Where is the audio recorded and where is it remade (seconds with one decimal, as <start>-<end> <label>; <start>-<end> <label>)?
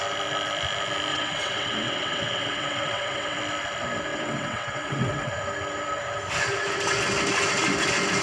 0.0-1.1 recorded; 1.1-3.4 remade; 3.4-4.1 recorded; 4.1-5.3 remade; 5.3-8.2 recorded